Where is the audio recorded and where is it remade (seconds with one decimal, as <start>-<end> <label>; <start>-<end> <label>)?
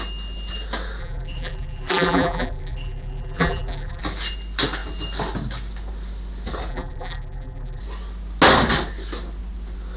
0.0-1.0 recorded; 1.0-4.0 remade; 4.0-6.7 recorded; 6.7-7.8 remade; 7.8-10.0 recorded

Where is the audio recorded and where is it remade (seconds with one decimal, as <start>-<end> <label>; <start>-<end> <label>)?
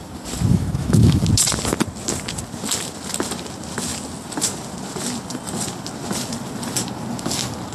0.0-0.5 recorded; 0.5-1.2 remade; 1.2-7.7 recorded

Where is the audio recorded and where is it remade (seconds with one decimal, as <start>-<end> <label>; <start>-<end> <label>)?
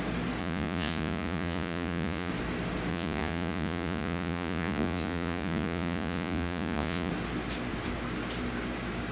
0.0-0.4 recorded; 0.4-2.3 remade; 2.3-2.9 recorded; 2.9-7.1 remade; 7.1-9.1 recorded